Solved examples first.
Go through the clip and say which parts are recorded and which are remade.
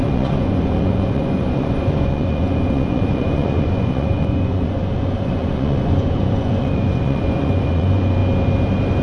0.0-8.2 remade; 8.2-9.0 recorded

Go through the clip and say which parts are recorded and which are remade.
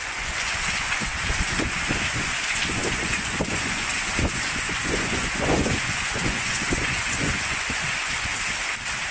0.0-8.3 remade; 8.3-9.1 recorded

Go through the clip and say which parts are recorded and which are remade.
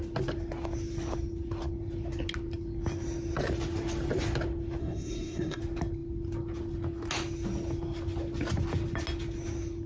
0.0-4.8 recorded; 4.8-5.6 remade; 5.6-9.9 recorded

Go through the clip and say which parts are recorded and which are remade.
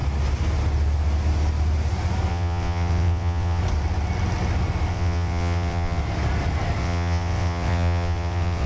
0.0-2.3 recorded; 2.3-3.6 remade; 3.6-4.9 recorded; 4.9-6.0 remade; 6.0-6.8 recorded; 6.8-8.7 remade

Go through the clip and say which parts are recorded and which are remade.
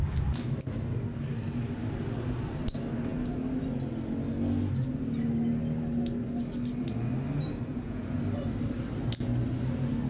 0.0-7.7 recorded; 7.7-8.2 remade; 8.2-10.1 recorded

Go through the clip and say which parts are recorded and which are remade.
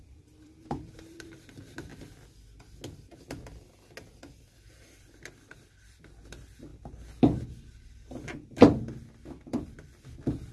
0.0-1.9 remade; 1.9-4.7 recorded; 4.7-6.7 remade; 6.7-9.3 recorded; 9.3-10.5 remade